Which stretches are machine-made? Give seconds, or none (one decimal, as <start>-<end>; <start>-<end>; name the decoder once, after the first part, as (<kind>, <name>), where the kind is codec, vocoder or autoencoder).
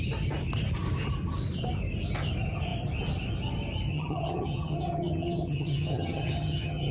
3.9-6.9 (vocoder, HiFi-GAN)